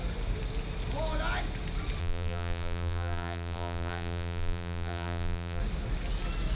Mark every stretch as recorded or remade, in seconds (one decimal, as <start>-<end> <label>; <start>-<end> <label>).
0.0-2.0 recorded; 2.0-5.6 remade; 5.6-6.5 recorded